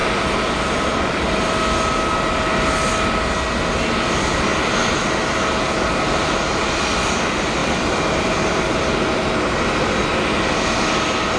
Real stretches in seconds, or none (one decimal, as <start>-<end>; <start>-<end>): 1.4-7.6; 9.2-11.4